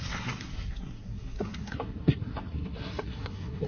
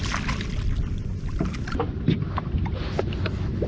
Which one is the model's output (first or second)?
first